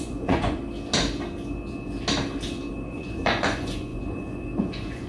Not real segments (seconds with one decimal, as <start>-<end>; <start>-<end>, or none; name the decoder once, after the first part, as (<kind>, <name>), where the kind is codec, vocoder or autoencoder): 0.0-0.6 (vocoder, Vocos); 2.7-5.1